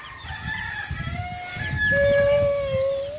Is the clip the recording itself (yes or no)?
yes